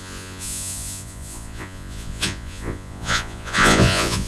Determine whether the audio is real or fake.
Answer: fake